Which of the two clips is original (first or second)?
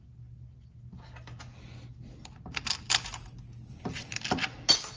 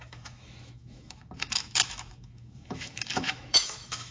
first